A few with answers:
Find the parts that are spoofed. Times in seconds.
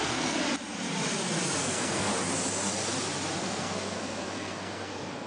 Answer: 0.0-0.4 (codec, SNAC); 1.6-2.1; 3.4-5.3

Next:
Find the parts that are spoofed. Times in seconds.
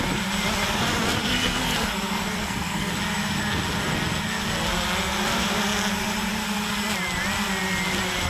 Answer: 1.2-2.9 (codec, SNAC)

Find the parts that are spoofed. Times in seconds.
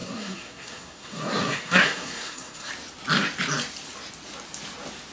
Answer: 0.0-2.7 (codec, SNAC)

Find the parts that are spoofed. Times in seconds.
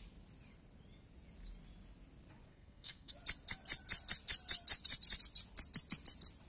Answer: 2.5-3.1 (codec, SNAC)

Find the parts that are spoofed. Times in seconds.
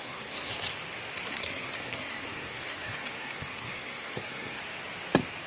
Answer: 0.0-0.5 (codec, SNAC); 1.3-4.6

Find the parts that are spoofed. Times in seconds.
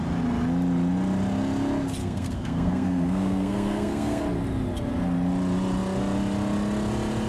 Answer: 2.0-4.2 (codec, SNAC)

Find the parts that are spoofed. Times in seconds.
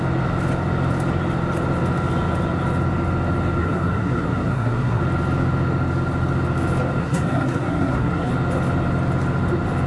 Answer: 3.6-5.0 (codec, SNAC); 7.0-8.3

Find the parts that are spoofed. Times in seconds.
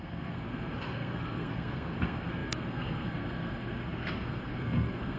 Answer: 0.0-5.2 (codec, SNAC)